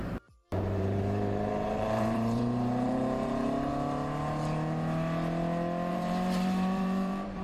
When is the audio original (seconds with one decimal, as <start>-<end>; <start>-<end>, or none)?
3.7-5.9